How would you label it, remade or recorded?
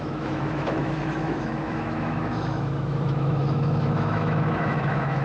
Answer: remade